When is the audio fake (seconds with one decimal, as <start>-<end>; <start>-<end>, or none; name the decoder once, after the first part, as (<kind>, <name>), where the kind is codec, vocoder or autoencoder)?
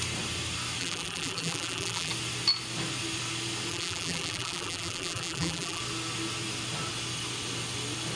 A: 0.8-2.1 (vocoder, BigVGAN v2); 3.7-5.8